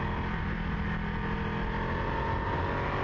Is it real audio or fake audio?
real